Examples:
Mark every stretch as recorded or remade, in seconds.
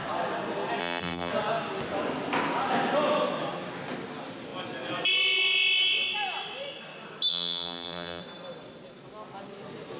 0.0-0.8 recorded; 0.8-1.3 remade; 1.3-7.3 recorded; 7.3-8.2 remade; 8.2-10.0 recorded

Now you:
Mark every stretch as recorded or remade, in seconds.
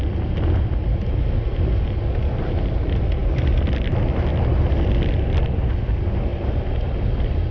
0.0-7.5 recorded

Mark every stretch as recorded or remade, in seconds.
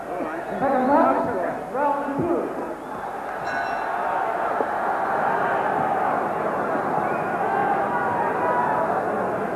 0.0-7.6 recorded; 7.6-8.2 remade; 8.2-9.6 recorded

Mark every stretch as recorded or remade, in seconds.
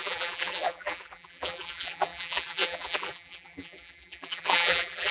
0.0-5.1 remade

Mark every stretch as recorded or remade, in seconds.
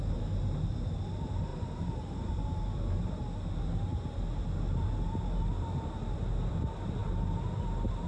0.0-1.5 recorded; 1.5-3.0 remade; 3.0-8.1 recorded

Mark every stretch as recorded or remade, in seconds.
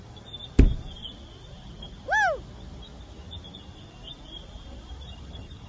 0.0-1.0 remade; 1.0-4.4 recorded; 4.4-5.7 remade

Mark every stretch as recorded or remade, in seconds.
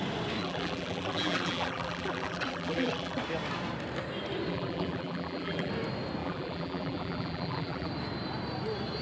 0.0-0.4 recorded; 0.4-3.2 remade; 3.2-4.5 recorded; 4.5-5.7 remade; 5.7-6.2 recorded; 6.2-7.9 remade; 7.9-9.0 recorded